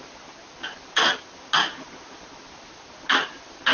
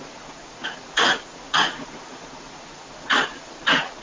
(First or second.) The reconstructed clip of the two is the second